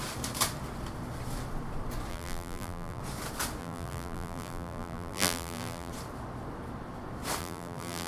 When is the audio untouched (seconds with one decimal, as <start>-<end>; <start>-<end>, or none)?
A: 0.0-2.1; 3.0-3.6; 5.9-7.4